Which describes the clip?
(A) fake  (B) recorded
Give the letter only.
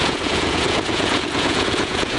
A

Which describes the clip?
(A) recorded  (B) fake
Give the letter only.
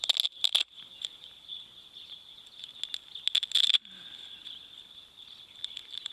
A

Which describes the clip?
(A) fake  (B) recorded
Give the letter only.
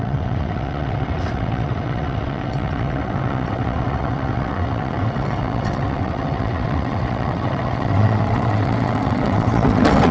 A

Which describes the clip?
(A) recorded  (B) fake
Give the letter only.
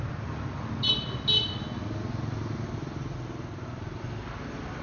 A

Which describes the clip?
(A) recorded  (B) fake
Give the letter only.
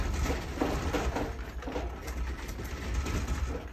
A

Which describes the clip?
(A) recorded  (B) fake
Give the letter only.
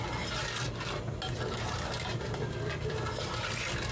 A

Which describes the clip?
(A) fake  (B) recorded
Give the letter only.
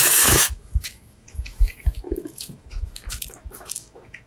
A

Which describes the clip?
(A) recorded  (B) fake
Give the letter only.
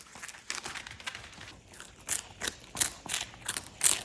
A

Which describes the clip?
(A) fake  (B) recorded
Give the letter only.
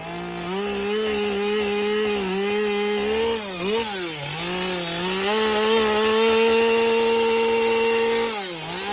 B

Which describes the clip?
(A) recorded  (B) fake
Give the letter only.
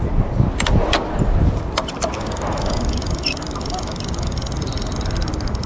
A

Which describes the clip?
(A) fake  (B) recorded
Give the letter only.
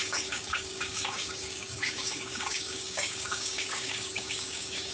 A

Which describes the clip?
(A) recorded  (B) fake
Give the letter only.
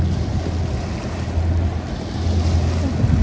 A